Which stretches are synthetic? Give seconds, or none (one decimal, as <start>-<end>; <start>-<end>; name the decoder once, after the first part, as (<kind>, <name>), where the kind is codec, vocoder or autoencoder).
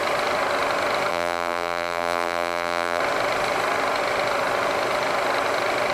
1.1-3.0 (vocoder, BigVGAN v2)